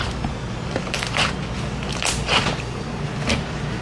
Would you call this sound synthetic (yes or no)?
no